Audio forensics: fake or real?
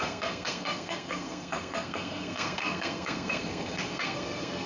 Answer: fake